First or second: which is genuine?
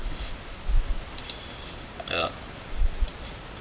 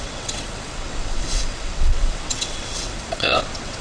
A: first